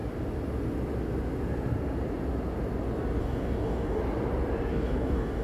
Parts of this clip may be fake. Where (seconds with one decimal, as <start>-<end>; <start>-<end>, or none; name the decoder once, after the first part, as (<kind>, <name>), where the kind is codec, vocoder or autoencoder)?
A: 3.2-4.0 (codec, DAC); 4.7-5.4